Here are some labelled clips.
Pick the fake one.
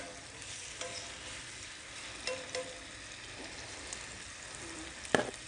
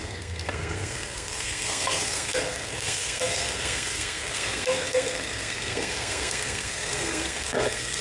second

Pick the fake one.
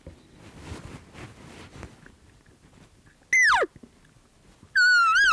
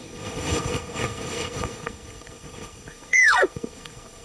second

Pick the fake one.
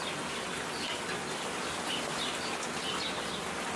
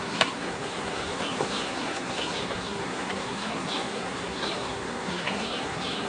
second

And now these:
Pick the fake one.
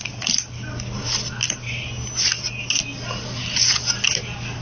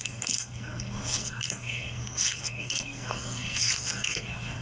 second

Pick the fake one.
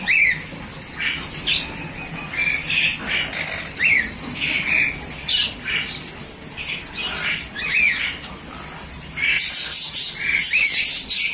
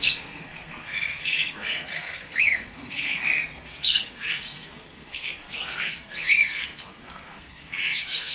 second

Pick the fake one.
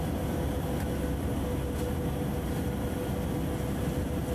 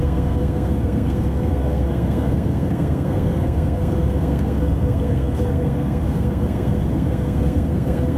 second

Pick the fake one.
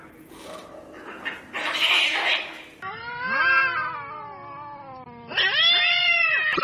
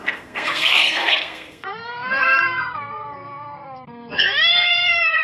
second